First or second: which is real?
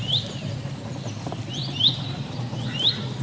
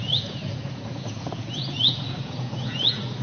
first